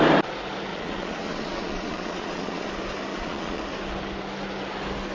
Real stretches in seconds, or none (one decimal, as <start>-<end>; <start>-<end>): 0.0-0.7; 2.7-3.1; 3.6-5.1